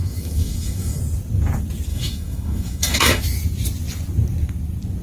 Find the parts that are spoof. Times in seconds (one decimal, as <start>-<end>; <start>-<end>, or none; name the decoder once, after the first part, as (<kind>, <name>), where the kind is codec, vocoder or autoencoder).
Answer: 0.0-1.0 (autoencoder, DAC-VAE); 1.9-3.2